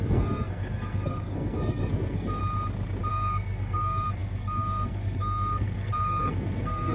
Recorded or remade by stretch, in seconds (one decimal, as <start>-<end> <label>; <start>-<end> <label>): 0.0-2.4 remade; 2.4-3.1 recorded; 3.1-6.9 remade